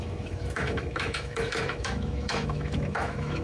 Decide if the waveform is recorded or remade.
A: remade